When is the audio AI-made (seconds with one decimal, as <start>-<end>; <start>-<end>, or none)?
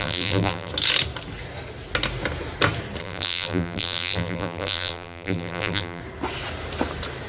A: 0.0-0.7; 3.0-6.0